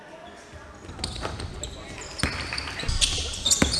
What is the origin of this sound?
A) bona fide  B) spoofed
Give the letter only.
A